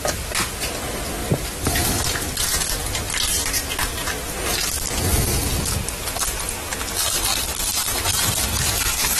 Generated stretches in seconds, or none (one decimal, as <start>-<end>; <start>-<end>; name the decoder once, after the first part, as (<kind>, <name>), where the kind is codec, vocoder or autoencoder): 7.3-9.2 (vocoder, BigVGAN v2)